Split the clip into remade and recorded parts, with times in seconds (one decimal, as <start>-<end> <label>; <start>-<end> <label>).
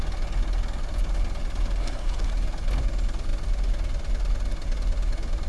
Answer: 0.0-1.8 recorded; 1.8-2.3 remade; 2.3-5.5 recorded